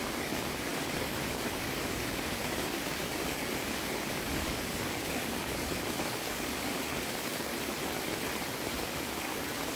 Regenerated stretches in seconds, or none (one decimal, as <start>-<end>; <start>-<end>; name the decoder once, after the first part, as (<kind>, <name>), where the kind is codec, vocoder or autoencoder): 0.0-7.5 (codec, DAC); 8.7-9.8